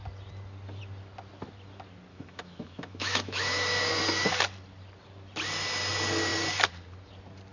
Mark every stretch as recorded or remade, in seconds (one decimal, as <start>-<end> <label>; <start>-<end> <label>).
0.0-2.1 recorded; 2.1-3.9 remade; 3.9-7.5 recorded